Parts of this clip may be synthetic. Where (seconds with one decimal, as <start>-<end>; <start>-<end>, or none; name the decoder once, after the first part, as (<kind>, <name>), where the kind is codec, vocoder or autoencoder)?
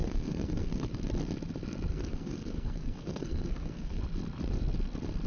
0.0-0.9 (codec, SNAC); 1.9-4.0